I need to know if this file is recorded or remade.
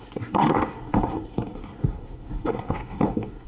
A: remade